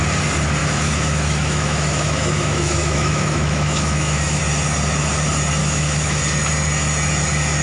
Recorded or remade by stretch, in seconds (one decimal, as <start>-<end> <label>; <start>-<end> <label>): 0.0-0.6 recorded; 0.6-4.4 remade; 4.4-5.6 recorded; 5.6-6.2 remade; 6.2-7.6 recorded